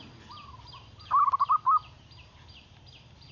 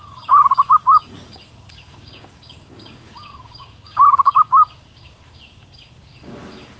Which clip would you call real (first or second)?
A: first